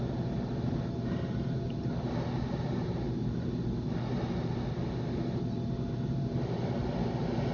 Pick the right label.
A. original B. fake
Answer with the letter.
A